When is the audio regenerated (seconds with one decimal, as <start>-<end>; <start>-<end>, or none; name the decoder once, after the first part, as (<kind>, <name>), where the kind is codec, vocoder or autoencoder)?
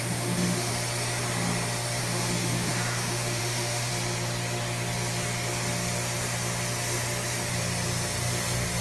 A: 0.0-0.7 (autoencoder, DAC-VAE); 2.0-3.9